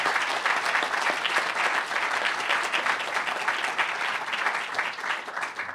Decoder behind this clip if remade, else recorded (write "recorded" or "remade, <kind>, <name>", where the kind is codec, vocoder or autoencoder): recorded